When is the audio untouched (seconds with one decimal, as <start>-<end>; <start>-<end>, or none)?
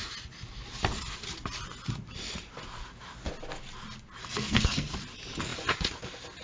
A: 0.0-4.2; 4.9-6.4